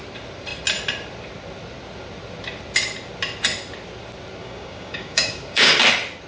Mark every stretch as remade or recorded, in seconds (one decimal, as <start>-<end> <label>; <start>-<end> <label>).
0.0-4.4 recorded; 4.4-5.8 remade; 5.8-6.3 recorded